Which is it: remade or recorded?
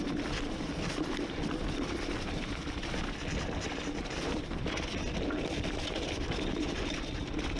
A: recorded